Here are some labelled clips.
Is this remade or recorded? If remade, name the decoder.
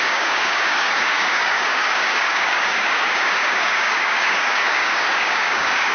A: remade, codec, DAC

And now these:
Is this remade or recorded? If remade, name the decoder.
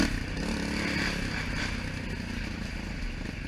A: recorded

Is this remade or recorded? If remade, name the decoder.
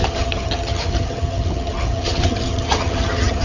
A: remade, vocoder, HiFi-GAN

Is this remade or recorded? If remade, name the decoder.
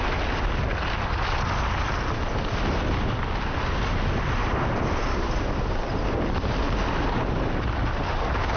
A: recorded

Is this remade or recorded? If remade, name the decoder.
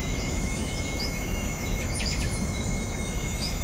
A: remade, autoencoder, DAC-VAE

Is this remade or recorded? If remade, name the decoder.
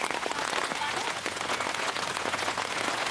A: remade, vocoder, Vocos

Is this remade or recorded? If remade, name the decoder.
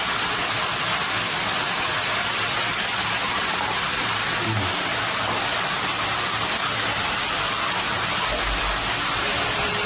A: recorded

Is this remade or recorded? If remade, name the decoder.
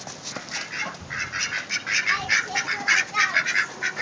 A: recorded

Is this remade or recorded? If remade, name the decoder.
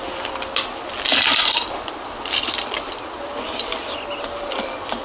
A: recorded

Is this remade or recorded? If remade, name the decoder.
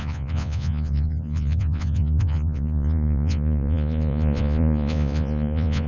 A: remade, vocoder, Vocos